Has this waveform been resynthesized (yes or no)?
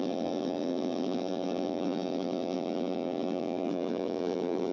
yes